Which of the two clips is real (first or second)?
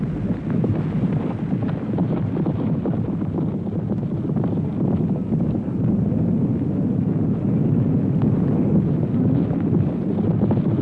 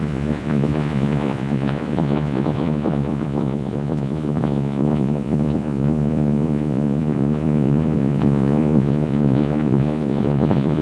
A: first